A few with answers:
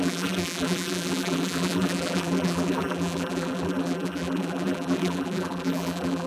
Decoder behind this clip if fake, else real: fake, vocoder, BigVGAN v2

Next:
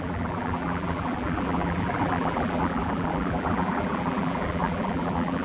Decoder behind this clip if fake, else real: fake, vocoder, BigVGAN v2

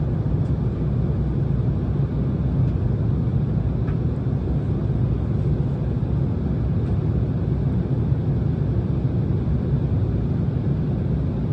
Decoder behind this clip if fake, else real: real